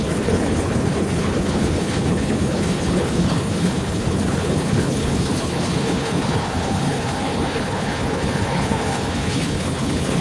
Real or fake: fake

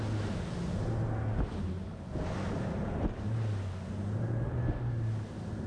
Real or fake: real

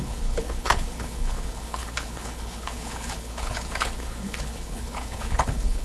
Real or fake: fake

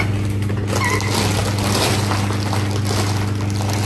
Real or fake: real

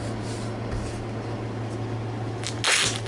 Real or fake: real